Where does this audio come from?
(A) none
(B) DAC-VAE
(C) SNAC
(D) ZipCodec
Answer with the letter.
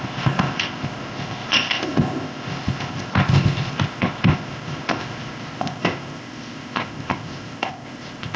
D